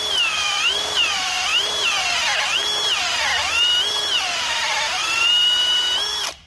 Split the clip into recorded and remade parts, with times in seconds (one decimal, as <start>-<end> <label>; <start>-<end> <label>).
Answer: 0.0-6.5 remade